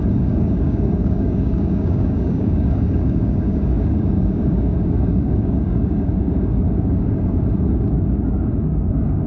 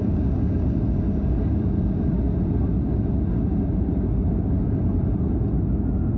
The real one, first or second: second